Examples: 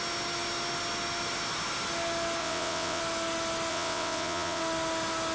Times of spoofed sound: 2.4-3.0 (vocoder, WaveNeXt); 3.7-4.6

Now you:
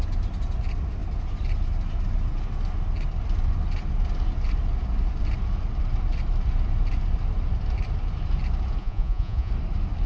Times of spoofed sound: 8.8-9.5 (vocoder, Vocos)

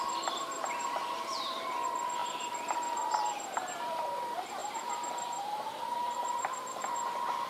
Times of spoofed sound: 0.0-7.5 (vocoder, BigVGAN v2)

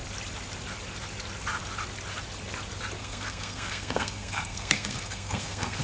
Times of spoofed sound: 3.0-5.8 (codec, SNAC)

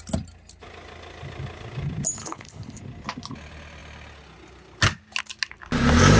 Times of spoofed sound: 2.2-2.8 (codec, HILCodec)

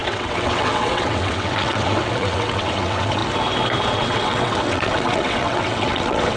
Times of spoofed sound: 0.0-3.2 (vocoder, WaveNeXt); 3.9-6.4